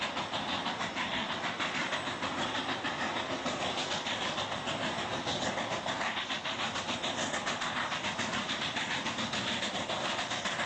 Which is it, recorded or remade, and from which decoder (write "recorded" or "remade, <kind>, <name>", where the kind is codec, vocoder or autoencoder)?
recorded